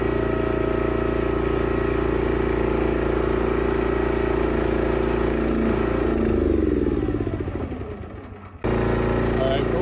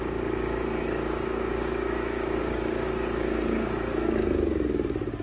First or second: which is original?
first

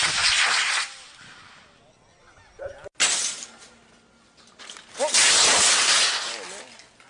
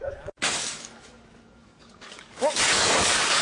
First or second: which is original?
first